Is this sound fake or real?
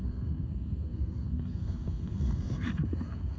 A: fake